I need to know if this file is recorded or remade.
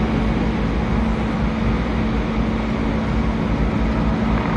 recorded